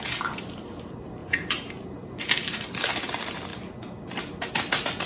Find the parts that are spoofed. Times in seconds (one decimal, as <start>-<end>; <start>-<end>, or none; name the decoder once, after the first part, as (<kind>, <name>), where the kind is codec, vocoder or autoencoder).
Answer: 1.2-2.7 (vocoder, BigVGAN v2)